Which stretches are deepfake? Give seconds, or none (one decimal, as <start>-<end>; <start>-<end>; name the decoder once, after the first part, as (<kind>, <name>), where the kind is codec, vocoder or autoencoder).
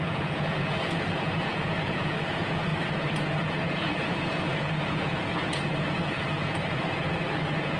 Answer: 0.0-7.8 (vocoder, Vocos)